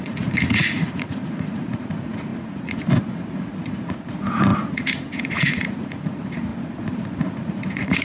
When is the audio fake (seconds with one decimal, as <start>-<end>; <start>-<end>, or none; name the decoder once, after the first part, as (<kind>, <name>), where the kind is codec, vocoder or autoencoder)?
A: 0.0-6.5 (vocoder, Vocos); 7.3-8.0